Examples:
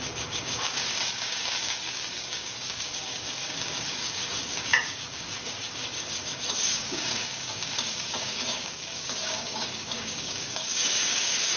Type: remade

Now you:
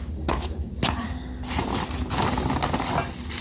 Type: recorded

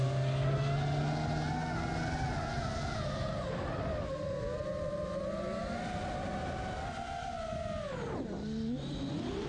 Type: recorded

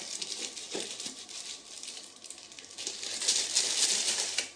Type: recorded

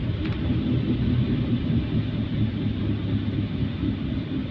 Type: recorded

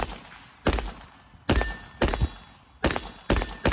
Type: recorded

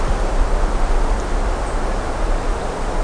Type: recorded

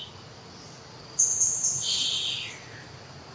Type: recorded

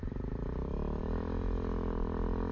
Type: recorded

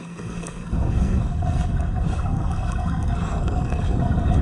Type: remade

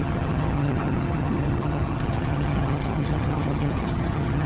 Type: remade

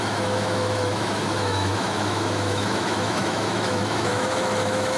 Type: remade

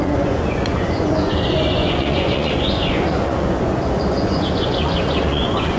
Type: remade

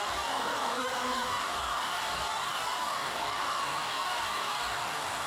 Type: remade